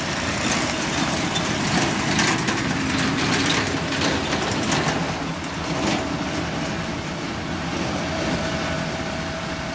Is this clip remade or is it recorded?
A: recorded